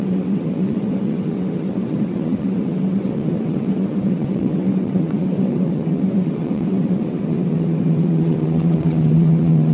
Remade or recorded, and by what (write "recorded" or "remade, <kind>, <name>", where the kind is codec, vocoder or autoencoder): remade, vocoder, WaveNeXt